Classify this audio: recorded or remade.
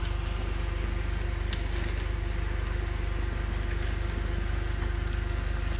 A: recorded